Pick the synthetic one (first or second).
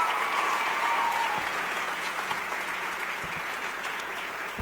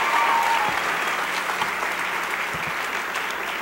first